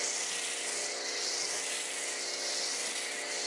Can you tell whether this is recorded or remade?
recorded